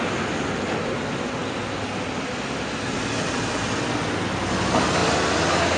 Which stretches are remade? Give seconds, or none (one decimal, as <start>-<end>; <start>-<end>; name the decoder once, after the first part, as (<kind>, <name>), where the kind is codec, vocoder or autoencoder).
none